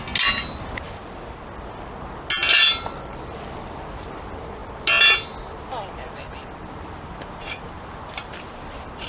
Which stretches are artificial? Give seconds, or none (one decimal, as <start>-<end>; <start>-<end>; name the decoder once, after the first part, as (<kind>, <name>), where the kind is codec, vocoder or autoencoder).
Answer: none